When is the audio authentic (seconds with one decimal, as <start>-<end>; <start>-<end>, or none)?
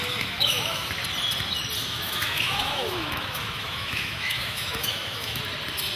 0.9-1.8; 5.4-6.0